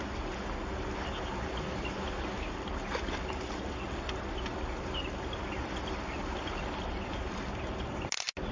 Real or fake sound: real